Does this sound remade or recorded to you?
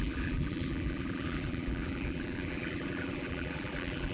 remade